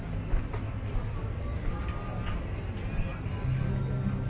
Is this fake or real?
real